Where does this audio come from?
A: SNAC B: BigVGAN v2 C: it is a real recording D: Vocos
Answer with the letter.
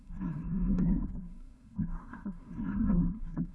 A